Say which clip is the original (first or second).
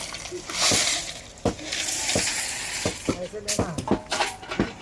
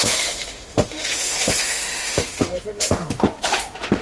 first